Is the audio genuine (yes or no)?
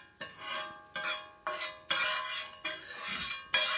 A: yes